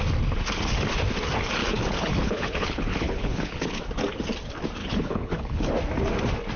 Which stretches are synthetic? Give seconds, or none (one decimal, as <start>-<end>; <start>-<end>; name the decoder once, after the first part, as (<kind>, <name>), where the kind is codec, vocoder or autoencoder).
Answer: 1.6-3.8 (codec, HILCodec); 4.8-5.7